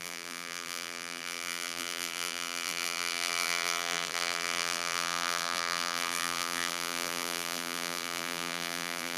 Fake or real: fake